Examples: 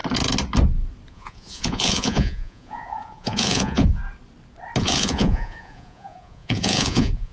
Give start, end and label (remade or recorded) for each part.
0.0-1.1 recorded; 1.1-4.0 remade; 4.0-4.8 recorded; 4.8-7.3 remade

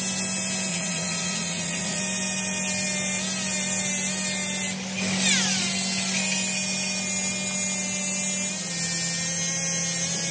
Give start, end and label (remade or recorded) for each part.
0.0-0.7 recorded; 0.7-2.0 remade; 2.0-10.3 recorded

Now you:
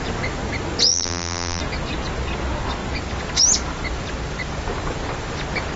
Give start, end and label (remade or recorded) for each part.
0.0-0.9 recorded; 0.9-1.6 remade; 1.6-5.8 recorded

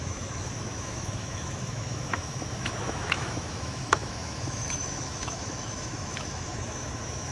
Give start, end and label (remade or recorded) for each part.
0.0-7.3 remade

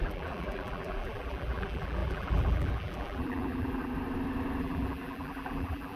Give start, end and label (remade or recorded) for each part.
0.0-3.9 remade; 3.9-4.6 recorded; 4.6-6.0 remade